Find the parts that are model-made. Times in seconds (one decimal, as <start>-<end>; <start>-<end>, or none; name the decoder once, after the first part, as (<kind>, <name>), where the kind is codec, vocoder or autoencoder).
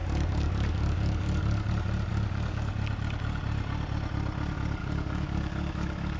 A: 0.0-1.7 (codec, DAC); 2.1-2.7; 4.8-6.2